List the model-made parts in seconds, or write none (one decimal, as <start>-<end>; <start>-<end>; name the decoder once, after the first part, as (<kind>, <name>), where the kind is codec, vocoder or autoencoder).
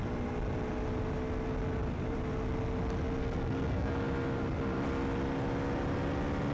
3.2-3.9 (codec, SNAC)